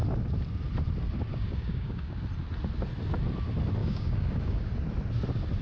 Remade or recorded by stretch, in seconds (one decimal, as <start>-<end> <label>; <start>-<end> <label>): 0.0-1.3 recorded; 1.3-2.2 remade; 2.2-3.8 recorded; 3.8-4.7 remade; 4.7-5.6 recorded

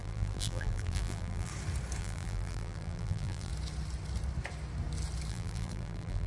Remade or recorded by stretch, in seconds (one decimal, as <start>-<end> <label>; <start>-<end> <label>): 0.0-1.5 remade; 1.5-2.0 recorded; 2.0-3.5 remade; 3.5-5.3 recorded; 5.3-6.3 remade

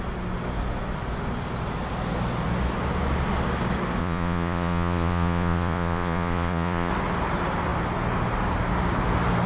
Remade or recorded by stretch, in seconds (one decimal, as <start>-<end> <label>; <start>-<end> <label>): 0.0-4.0 recorded; 4.0-6.9 remade; 6.9-9.5 recorded

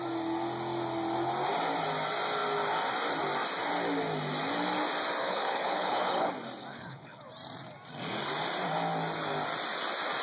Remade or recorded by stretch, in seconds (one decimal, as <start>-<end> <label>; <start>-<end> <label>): 0.0-5.2 recorded; 5.2-6.3 remade; 6.3-6.7 recorded; 6.7-7.2 remade; 7.2-10.2 recorded

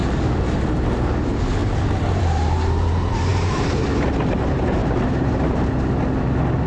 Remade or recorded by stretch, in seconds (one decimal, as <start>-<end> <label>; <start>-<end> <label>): 0.0-1.6 recorded; 1.6-2.2 remade; 2.2-3.3 recorded; 3.3-5.7 remade; 5.7-6.7 recorded

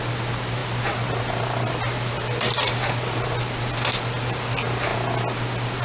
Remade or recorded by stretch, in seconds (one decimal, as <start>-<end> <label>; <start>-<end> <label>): 0.0-5.8 recorded